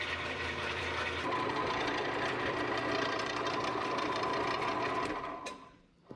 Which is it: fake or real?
fake